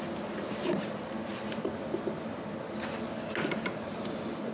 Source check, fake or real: real